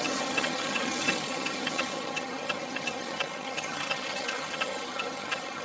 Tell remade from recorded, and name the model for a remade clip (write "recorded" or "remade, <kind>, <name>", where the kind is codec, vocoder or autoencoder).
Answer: remade, vocoder, HiFi-GAN